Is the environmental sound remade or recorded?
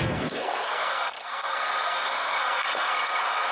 remade